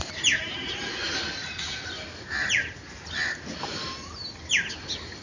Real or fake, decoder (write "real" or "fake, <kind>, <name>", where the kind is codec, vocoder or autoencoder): real